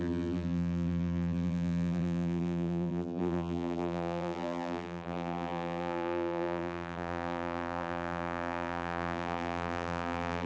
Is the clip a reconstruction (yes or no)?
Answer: yes